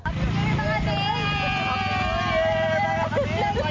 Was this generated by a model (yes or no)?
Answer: no